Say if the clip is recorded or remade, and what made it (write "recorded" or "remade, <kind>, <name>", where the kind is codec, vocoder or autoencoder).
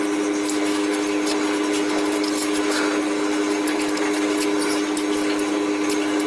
recorded